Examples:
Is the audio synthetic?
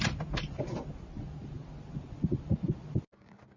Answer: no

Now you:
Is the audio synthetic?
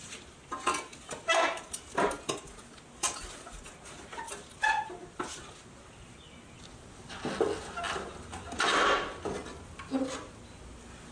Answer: no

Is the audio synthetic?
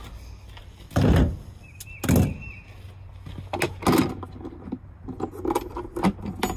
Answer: no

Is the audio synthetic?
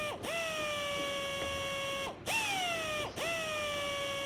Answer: no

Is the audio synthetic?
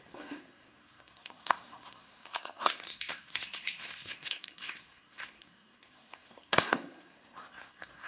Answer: yes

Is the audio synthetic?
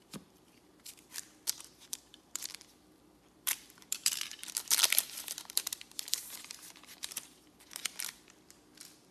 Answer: yes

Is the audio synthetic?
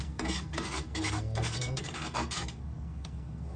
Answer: yes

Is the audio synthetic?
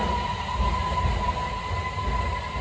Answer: no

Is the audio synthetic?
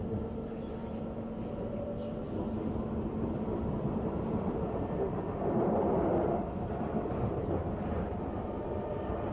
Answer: no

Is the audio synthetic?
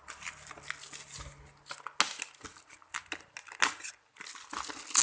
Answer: no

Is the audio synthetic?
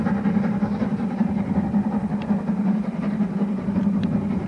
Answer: yes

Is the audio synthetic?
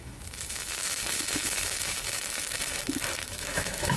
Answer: yes